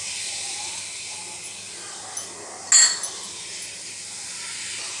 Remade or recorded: recorded